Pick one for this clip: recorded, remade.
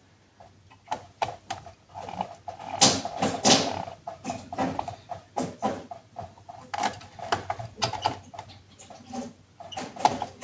recorded